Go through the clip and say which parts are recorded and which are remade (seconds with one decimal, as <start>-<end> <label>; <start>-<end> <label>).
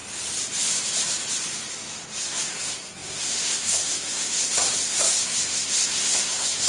0.0-2.2 recorded; 2.2-6.7 remade